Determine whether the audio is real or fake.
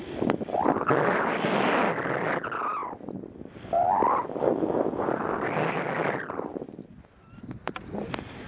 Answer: real